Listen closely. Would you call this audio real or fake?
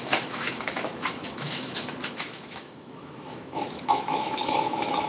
fake